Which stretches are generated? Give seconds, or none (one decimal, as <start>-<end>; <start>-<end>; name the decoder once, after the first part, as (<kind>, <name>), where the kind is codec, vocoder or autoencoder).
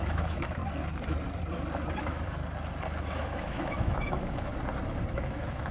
0.0-0.6 (autoencoder, DAC-VAE); 2.0-2.4; 3.0-4.5; 5.1-5.7